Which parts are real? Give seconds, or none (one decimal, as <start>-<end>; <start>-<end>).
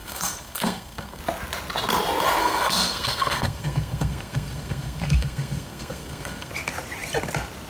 1.2-2.4; 6.5-7.7